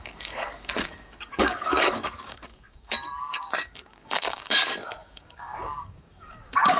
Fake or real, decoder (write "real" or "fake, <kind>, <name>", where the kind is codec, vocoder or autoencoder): fake, codec, DAC